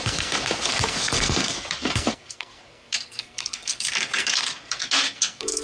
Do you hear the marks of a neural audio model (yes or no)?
yes